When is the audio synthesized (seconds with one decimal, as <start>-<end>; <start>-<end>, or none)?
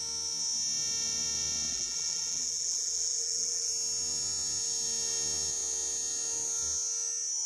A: 1.7-3.7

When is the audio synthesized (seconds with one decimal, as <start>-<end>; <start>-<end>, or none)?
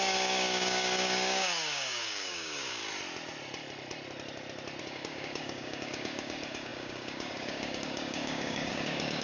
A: 0.0-2.8; 4.8-9.2